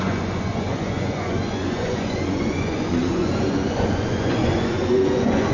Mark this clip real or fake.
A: fake